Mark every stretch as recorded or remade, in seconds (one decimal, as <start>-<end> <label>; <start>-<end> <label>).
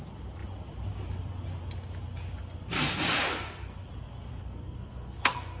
0.0-3.3 recorded; 3.3-3.9 remade; 3.9-4.4 recorded; 4.4-5.6 remade